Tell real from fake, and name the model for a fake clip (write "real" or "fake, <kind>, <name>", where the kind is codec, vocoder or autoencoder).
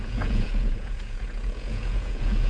fake, vocoder, Vocos